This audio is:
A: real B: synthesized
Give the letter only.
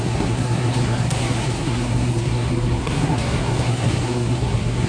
B